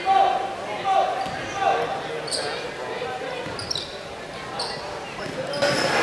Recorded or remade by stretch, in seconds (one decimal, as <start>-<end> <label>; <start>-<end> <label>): 0.0-2.8 recorded; 2.8-5.2 remade; 5.2-6.0 recorded